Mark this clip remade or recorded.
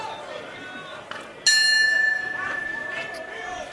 recorded